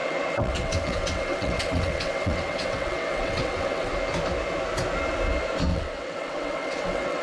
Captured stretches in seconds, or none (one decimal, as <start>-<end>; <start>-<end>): 3.9-5.7